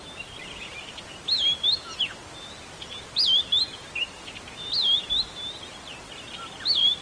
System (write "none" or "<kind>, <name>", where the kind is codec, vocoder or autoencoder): none